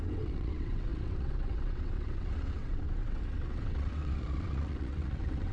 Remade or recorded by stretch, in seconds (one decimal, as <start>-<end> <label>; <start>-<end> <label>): 0.0-5.5 remade